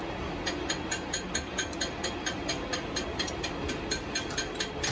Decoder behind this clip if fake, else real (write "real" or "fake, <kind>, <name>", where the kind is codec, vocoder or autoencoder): real